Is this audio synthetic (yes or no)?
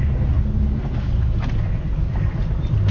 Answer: yes